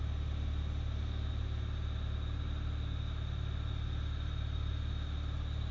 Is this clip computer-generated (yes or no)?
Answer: no